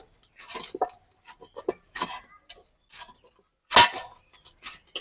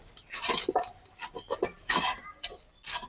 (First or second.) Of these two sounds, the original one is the first